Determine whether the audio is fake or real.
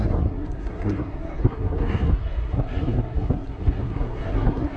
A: fake